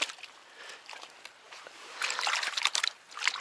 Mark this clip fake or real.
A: real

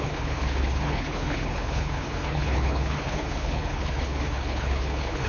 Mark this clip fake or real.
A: fake